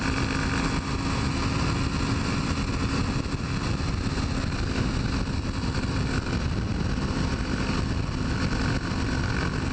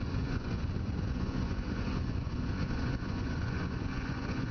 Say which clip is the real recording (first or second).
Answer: first